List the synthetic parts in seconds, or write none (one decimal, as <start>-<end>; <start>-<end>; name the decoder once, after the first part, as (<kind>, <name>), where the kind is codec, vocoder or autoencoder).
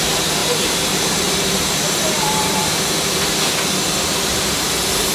0.4-3.5 (vocoder, BigVGAN v2); 4.3-5.1